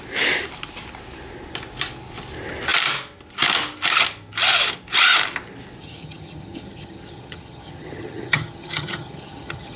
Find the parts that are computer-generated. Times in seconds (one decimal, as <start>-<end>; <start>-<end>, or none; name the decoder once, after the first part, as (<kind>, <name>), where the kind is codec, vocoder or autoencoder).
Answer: 5.8-9.8 (vocoder, HiFi-GAN)